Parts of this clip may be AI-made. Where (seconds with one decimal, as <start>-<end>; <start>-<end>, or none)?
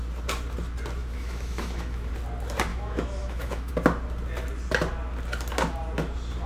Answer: 1.0-2.1; 2.7-3.7